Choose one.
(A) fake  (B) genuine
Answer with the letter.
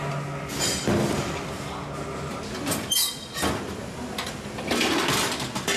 B